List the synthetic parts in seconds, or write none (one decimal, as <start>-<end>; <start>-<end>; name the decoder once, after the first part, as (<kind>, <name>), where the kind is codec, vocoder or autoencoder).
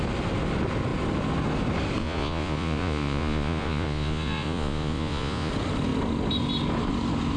2.0-5.5 (vocoder, Vocos)